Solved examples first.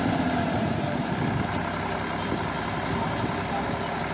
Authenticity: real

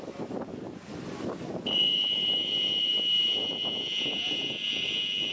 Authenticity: real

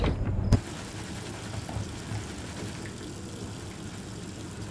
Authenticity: real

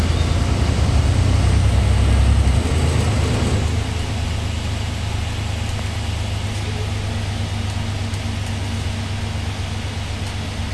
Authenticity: real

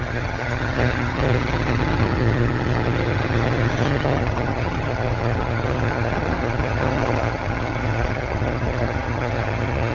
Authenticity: fake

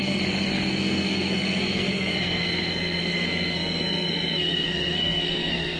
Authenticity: fake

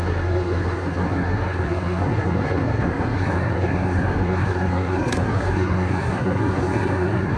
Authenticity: fake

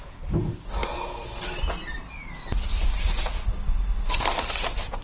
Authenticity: real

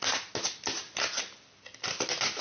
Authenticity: real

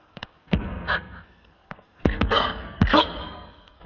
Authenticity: fake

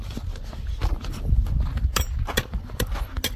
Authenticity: real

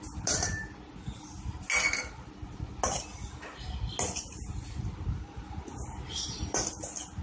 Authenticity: real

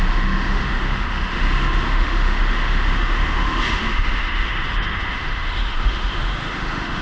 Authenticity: fake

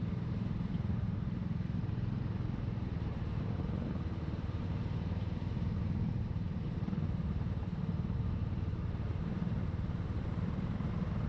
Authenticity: fake